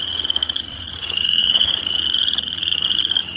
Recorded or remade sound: remade